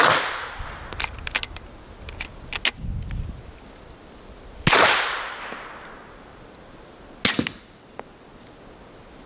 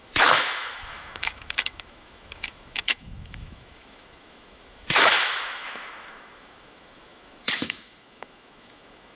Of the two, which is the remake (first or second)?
second